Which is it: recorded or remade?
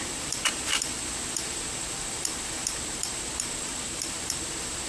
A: remade